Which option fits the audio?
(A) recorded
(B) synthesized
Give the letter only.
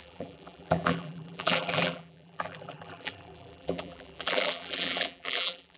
B